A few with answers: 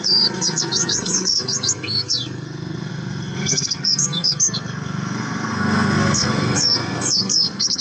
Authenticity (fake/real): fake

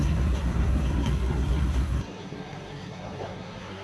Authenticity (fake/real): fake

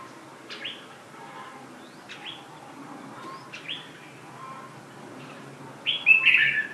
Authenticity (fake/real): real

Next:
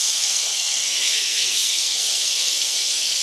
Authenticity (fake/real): fake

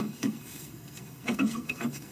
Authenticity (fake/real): fake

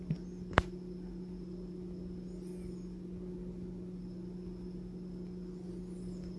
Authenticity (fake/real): real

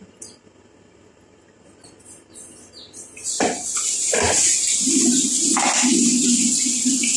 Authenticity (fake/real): real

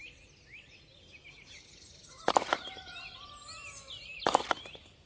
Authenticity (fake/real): real